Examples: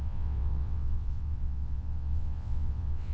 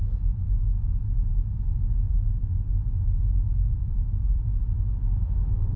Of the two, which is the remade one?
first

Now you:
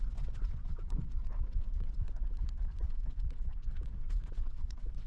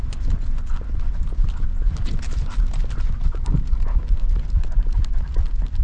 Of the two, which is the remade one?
first